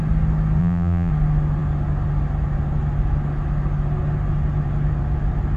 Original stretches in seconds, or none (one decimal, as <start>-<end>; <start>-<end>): 0.0-0.6; 1.1-5.6